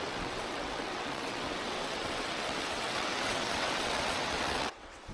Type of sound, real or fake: fake